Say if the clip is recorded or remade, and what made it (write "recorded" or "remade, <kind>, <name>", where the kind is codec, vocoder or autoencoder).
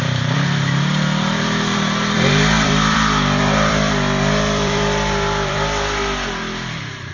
remade, vocoder, BigVGAN v2